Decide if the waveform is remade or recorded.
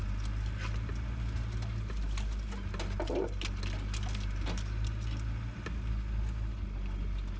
recorded